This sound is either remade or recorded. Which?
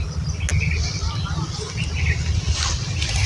recorded